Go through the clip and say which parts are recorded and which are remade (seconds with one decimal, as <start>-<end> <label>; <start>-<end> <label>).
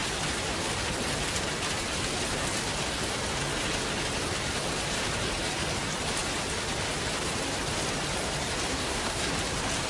0.0-8.7 recorded; 8.7-9.3 remade; 9.3-9.9 recorded